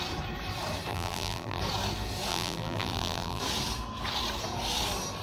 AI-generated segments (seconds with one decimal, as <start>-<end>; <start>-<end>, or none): 0.9-1.6; 2.3-3.4